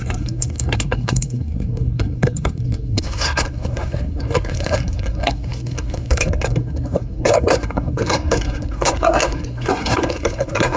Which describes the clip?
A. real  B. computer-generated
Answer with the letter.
B